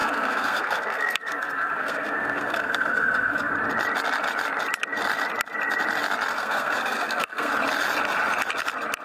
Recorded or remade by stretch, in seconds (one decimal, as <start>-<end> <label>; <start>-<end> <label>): 0.0-3.5 remade; 3.5-6.3 recorded; 6.3-7.5 remade; 7.5-9.0 recorded